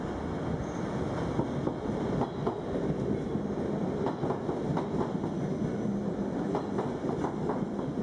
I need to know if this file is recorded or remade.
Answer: recorded